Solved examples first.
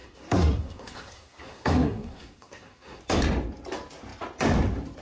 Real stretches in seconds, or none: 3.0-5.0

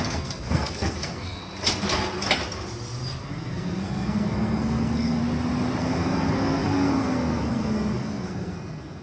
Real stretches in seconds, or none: 1.4-3.2; 5.2-5.8

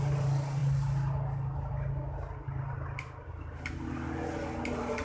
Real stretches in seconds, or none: 0.0-5.0